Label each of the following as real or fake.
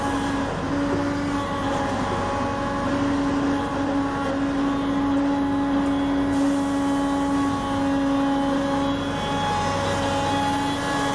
real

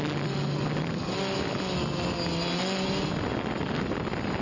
real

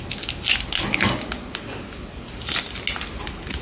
real